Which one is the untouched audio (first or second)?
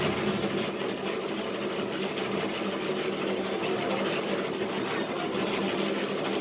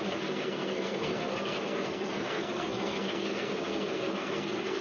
first